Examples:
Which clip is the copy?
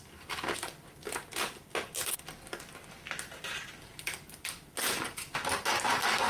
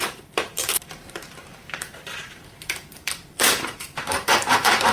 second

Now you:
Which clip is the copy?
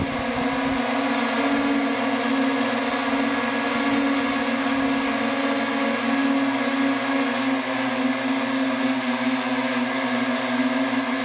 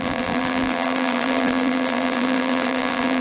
second